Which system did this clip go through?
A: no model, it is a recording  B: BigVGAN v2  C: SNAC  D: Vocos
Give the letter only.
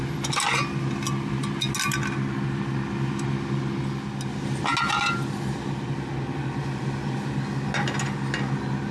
A